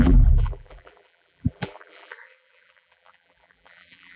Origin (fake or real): fake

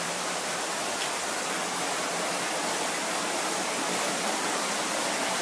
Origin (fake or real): real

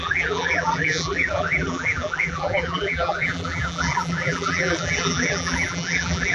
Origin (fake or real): fake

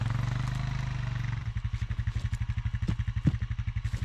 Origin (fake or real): real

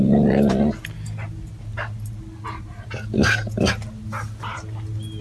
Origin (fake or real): real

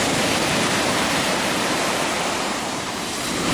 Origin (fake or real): fake